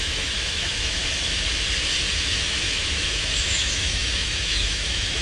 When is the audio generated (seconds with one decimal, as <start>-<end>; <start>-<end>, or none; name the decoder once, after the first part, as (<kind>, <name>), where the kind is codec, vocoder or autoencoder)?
0.0-1.0 (autoencoder, DAC-VAE); 2.1-5.2

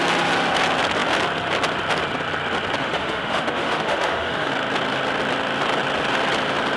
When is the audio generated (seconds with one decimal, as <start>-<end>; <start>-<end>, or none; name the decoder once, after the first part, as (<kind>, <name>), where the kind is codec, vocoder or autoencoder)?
2.8-4.5 (autoencoder, DAC-VAE)

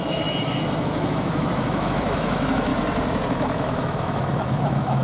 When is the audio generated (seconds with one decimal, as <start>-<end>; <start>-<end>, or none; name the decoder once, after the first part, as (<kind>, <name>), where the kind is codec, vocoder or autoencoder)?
0.0-2.7 (autoencoder, DAC-VAE); 3.3-5.0

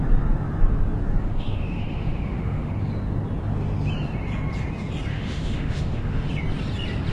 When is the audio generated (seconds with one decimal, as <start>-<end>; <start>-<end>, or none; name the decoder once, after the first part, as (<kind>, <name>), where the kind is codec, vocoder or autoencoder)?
1.2-2.7 (autoencoder, DAC-VAE); 5.1-6.3